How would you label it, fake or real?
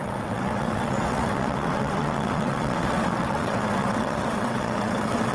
fake